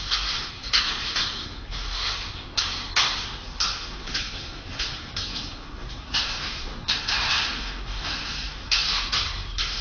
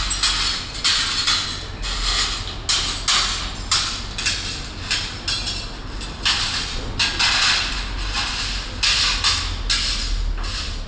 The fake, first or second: first